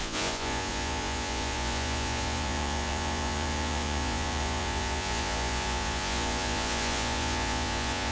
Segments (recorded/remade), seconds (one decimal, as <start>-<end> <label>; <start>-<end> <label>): 0.0-8.1 remade

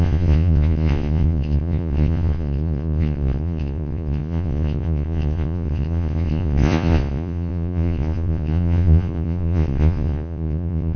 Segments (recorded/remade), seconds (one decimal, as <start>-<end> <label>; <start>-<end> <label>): 0.0-11.0 remade

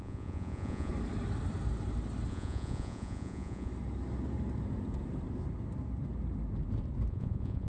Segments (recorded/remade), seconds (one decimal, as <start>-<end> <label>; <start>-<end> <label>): 0.0-0.9 remade; 0.9-2.3 recorded; 2.3-3.7 remade; 3.7-7.1 recorded; 7.1-7.7 remade